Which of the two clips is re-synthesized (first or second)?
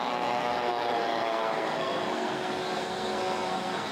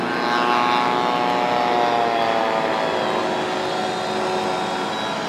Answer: first